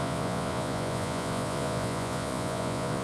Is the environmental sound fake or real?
fake